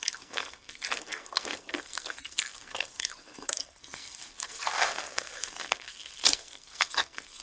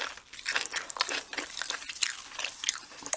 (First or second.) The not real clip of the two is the first